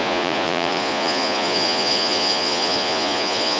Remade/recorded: remade